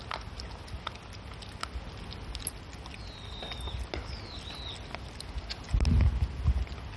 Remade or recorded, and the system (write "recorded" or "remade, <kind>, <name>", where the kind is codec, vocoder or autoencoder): recorded